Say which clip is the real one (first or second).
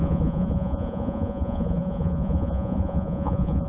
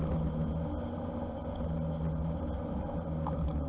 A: second